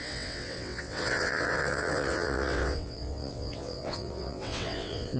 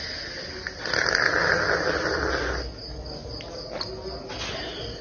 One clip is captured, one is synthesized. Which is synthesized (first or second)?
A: first